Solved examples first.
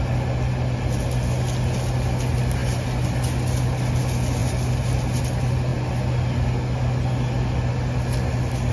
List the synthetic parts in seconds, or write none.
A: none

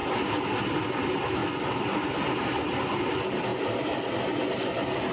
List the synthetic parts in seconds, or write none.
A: none

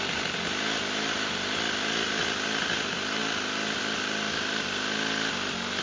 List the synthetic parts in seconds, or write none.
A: none

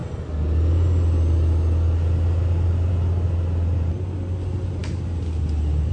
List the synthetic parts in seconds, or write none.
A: none

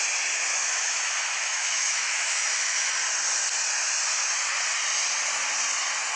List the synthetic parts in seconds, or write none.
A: 0.6-2.9 (autoencoder, DAC-VAE)

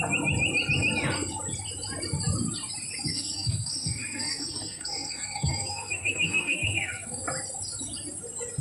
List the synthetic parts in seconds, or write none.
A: 3.1-7.2 (codec, SNAC)

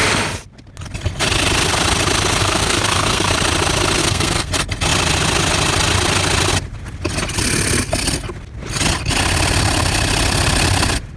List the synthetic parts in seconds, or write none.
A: 2.4-3.3 (codec, SNAC); 4.0-4.5